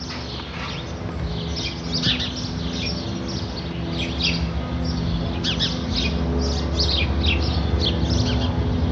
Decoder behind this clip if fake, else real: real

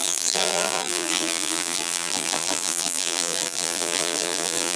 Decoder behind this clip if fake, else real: fake, vocoder, BigVGAN v2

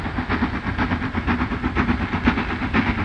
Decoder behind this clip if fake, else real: real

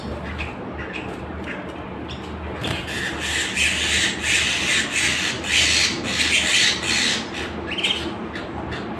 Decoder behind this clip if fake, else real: real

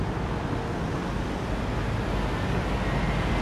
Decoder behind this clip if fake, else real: real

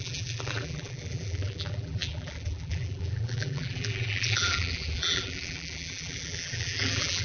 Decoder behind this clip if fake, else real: fake, vocoder, BigVGAN v2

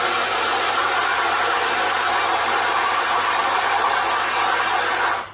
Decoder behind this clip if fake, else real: real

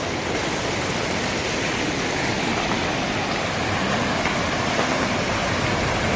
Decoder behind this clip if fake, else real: real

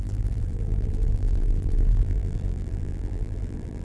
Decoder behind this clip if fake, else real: fake, vocoder, BigVGAN v2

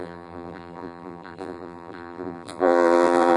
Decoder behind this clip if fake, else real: fake, vocoder, BigVGAN v2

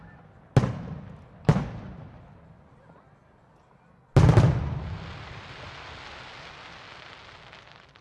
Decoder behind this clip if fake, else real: real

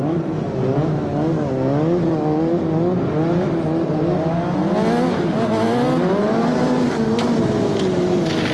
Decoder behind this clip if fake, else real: real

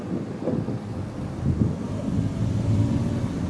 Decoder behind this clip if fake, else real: real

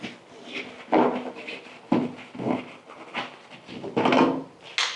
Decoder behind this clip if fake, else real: real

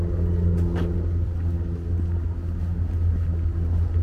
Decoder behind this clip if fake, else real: real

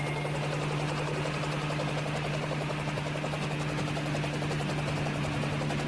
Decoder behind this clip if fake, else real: real